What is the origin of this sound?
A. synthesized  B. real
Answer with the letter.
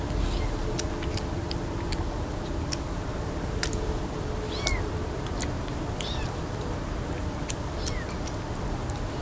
B